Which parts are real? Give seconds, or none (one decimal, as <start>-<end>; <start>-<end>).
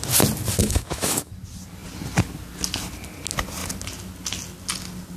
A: 0.0-0.6; 1.3-5.2